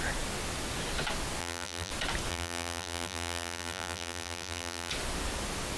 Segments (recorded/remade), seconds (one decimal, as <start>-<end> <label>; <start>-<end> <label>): 0.0-1.4 recorded; 1.4-1.9 remade; 1.9-2.3 recorded; 2.3-4.9 remade; 4.9-5.8 recorded